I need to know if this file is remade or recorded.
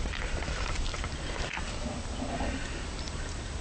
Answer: recorded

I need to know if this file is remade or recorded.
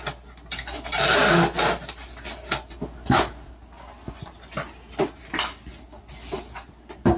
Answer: recorded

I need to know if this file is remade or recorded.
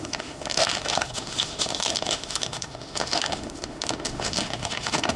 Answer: remade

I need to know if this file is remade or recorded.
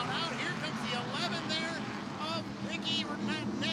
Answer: recorded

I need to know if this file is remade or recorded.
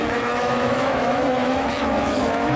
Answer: remade